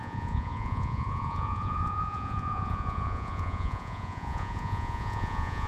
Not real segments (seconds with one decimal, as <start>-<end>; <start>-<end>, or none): 0.0-5.7